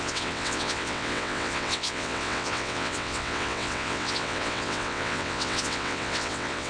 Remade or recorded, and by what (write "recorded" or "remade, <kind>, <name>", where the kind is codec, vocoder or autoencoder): remade, vocoder, WaveNeXt